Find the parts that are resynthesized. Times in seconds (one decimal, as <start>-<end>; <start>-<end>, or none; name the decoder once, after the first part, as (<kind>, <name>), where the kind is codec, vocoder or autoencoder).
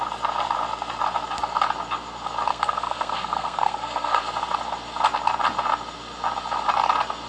2.5-4.2 (codec, SNAC)